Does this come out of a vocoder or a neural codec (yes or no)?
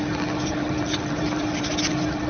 no